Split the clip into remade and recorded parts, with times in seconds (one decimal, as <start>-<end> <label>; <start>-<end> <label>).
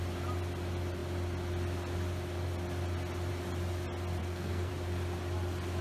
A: 0.0-4.2 recorded; 4.2-4.7 remade; 4.7-5.8 recorded